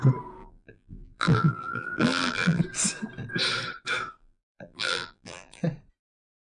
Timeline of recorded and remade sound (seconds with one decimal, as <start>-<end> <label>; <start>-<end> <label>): 0.0-0.4 recorded; 0.4-2.6 remade; 2.6-4.2 recorded; 4.2-5.6 remade; 5.6-6.5 recorded